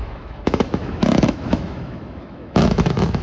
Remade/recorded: remade